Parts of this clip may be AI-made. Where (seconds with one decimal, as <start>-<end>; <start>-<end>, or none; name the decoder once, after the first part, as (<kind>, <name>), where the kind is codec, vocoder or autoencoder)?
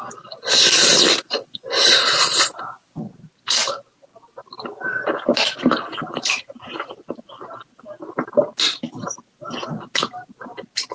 none